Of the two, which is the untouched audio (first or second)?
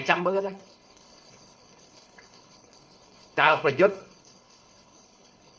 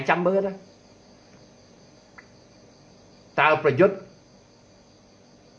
second